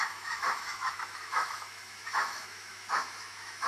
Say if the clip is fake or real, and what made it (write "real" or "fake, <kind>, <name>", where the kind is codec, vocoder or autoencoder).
fake, autoencoder, DAC-VAE